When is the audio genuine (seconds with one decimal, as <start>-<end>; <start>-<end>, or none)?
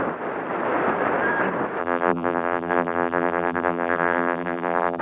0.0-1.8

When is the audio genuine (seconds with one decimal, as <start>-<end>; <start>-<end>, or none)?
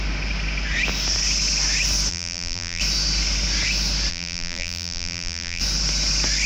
0.0-2.1; 2.8-4.1; 5.6-6.5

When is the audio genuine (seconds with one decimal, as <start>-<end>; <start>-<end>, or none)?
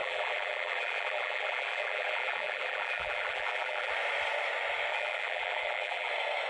3.9-4.9; 6.1-6.5